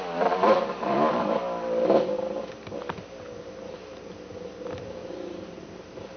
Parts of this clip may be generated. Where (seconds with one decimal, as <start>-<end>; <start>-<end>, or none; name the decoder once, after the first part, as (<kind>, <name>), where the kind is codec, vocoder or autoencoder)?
5.0-6.2 (vocoder, BigVGAN v2)